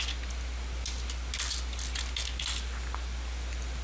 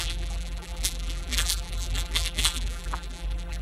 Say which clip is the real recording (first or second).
first